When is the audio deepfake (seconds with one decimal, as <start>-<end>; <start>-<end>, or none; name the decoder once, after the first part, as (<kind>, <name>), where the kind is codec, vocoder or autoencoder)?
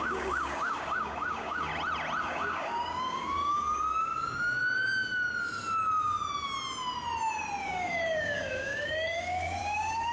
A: 0.0-1.7 (codec, DAC); 2.2-4.6; 7.6-10.1